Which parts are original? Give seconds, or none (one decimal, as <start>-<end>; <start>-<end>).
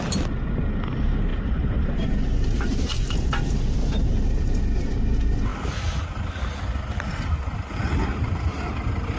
0.0-1.3; 5.0-9.2